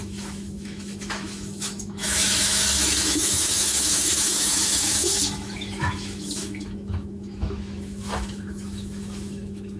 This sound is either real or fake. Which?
fake